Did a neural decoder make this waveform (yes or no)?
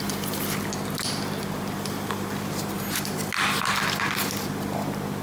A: no